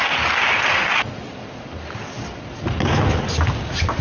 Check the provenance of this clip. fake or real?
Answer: real